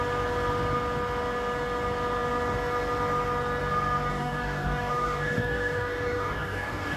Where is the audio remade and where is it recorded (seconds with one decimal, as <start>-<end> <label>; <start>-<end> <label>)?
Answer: 0.0-4.1 recorded; 4.1-7.0 remade